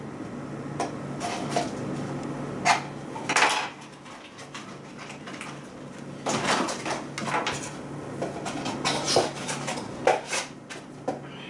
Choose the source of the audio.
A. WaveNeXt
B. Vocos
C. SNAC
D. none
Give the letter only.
D